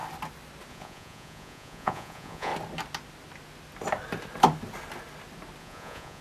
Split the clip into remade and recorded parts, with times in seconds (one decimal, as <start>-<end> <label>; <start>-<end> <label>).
0.0-0.7 recorded; 0.7-2.5 remade; 2.5-5.6 recorded; 5.6-6.2 remade